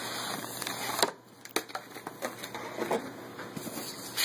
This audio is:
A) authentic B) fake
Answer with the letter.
A